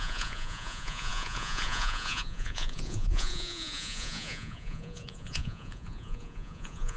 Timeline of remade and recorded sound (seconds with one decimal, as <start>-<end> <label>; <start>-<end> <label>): 0.0-7.0 remade